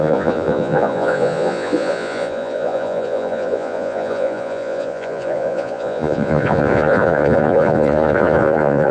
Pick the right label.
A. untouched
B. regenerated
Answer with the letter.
B